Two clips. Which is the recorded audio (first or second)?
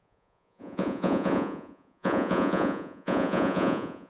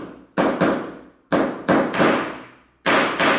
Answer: second